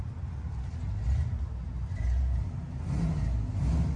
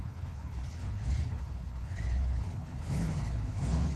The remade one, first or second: second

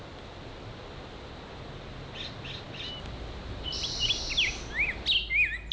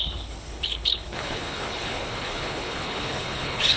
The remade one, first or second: second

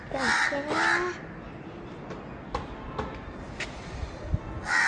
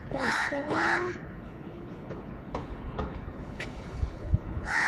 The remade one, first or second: second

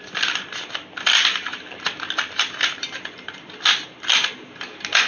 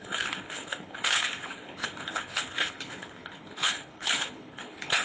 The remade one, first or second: second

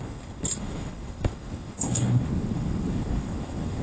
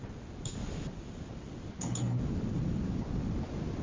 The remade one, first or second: first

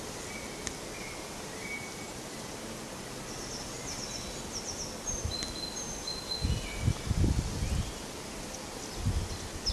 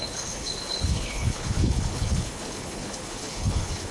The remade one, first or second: second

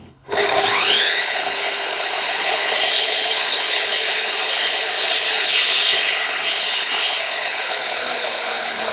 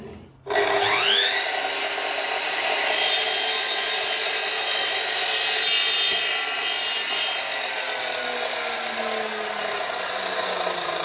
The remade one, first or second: first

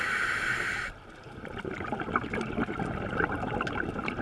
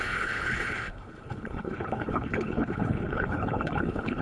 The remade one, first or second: second